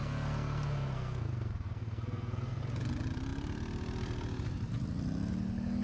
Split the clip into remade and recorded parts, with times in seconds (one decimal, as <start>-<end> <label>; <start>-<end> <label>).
0.0-2.6 remade; 2.6-5.8 recorded